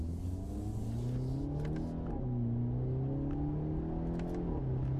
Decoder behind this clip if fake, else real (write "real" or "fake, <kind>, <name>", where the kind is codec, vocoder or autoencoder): real